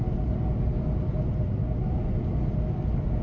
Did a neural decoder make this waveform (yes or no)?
no